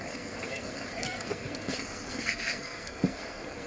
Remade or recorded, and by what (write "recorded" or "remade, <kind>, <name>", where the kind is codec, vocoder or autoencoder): remade, codec, SNAC